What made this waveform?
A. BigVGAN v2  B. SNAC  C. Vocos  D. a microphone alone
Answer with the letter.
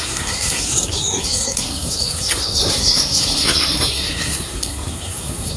B